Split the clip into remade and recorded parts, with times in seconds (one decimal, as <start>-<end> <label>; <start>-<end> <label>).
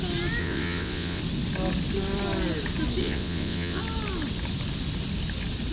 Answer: 0.0-0.4 recorded; 0.4-1.2 remade; 1.2-3.0 recorded; 3.0-3.8 remade; 3.8-5.7 recorded